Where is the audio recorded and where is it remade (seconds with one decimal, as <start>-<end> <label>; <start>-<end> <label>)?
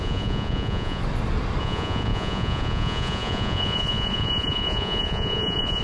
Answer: 0.0-1.0 remade; 1.0-1.6 recorded; 1.6-5.8 remade